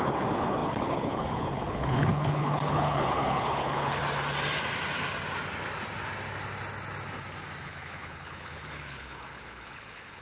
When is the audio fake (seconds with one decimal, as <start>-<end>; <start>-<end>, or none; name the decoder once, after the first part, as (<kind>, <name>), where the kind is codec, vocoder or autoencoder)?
0.0-4.0 (codec, HILCodec); 7.6-10.2